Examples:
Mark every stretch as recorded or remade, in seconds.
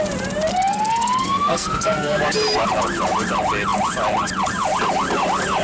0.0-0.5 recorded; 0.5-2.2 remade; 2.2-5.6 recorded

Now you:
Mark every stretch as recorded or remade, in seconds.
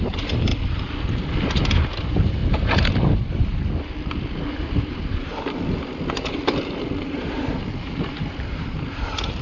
0.0-0.5 remade; 0.5-2.0 recorded; 2.0-2.4 remade; 2.4-3.1 recorded; 3.1-3.6 remade; 3.6-4.6 recorded; 4.6-5.3 remade; 5.3-7.0 recorded; 7.0-9.4 remade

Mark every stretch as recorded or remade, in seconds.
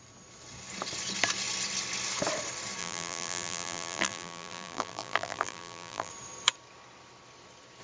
0.0-2.8 recorded; 2.8-6.1 remade; 6.1-7.8 recorded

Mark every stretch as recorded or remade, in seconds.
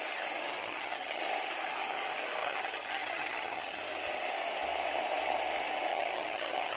0.0-0.6 recorded; 0.6-1.2 remade; 1.2-2.4 recorded; 2.4-3.8 remade; 3.8-5.9 recorded; 5.9-6.8 remade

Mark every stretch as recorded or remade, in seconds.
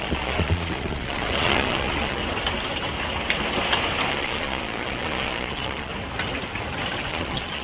0.0-2.2 remade; 2.2-4.1 recorded; 4.1-5.9 remade; 5.9-7.1 recorded; 7.1-7.6 remade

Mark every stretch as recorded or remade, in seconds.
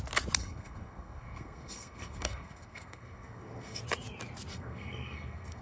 0.0-0.4 recorded; 0.4-3.8 remade; 3.8-4.5 recorded; 4.5-5.6 remade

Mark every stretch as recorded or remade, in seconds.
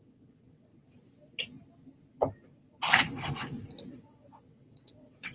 0.0-0.7 remade; 0.7-3.9 recorded; 3.9-5.3 remade